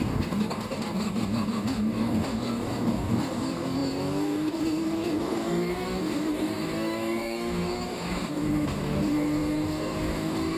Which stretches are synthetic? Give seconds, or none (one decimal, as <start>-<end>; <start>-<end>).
0.0-10.6